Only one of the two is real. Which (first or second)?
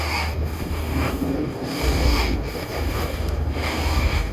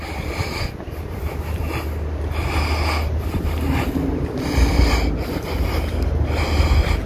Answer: second